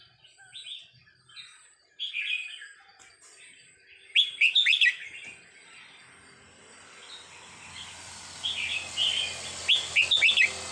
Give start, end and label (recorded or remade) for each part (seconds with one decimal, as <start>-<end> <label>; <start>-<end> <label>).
0.0-10.7 recorded